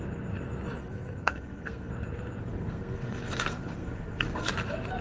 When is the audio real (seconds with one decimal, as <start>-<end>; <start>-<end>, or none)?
0.0-0.8; 1.9-2.4; 4.5-5.0